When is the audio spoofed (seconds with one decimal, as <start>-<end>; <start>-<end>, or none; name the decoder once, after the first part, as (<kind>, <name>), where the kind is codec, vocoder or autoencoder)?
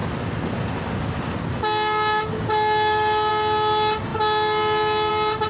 none